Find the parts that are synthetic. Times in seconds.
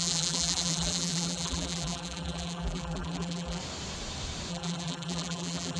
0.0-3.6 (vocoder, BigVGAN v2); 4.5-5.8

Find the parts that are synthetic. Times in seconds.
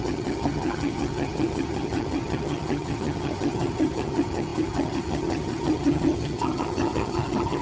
0.0-7.6 (vocoder, HiFi-GAN)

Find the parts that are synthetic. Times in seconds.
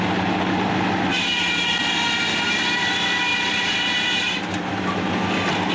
1.1-1.7 (vocoder, BigVGAN v2); 3.3-5.1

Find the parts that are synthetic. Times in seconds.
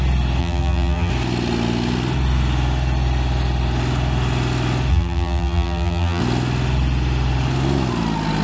0.4-1.1 (vocoder, BigVGAN v2); 4.9-6.2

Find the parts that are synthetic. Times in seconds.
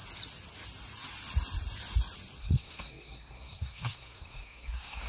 2.4-5.1 (codec, SNAC)